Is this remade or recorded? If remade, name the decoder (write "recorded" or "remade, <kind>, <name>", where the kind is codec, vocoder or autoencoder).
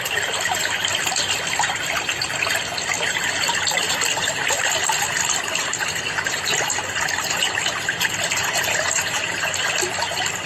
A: recorded